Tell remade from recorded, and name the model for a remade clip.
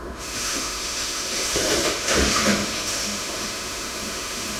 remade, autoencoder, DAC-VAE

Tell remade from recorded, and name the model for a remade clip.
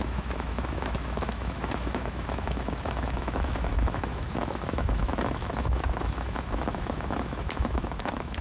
remade, autoencoder, DAC-VAE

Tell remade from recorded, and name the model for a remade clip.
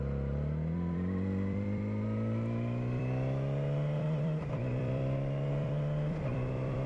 remade, vocoder, BigVGAN v2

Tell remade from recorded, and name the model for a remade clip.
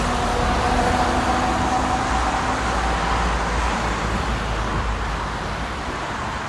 recorded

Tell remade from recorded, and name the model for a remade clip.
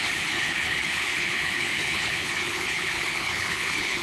remade, codec, HILCodec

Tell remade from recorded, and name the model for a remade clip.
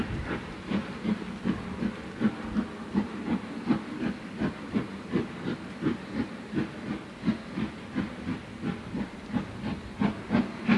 recorded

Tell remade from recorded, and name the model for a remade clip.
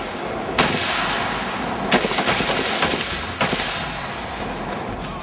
recorded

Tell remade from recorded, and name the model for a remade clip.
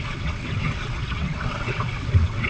remade, vocoder, WaveNeXt